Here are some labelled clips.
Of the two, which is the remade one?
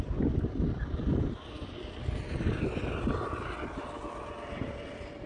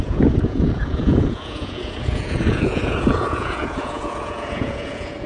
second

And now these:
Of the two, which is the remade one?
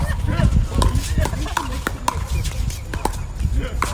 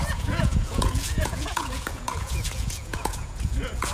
second